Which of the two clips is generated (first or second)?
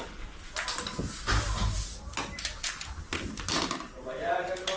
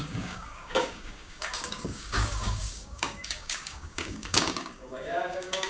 second